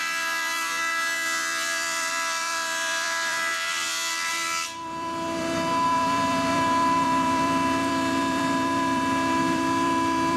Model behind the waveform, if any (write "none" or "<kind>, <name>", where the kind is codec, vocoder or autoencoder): vocoder, BigVGAN v2